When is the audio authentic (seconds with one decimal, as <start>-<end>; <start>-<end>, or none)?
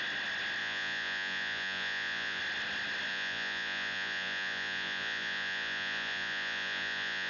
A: 0.0-0.6; 2.4-3.1